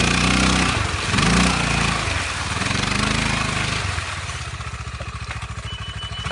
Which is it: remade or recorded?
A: recorded